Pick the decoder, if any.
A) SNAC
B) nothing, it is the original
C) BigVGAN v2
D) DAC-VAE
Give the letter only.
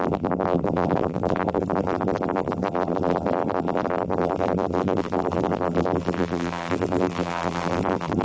C